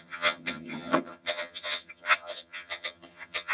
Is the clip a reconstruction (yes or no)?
yes